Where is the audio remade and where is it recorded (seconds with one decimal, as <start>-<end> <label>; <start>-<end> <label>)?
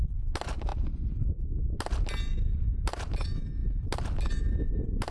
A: 0.0-5.1 recorded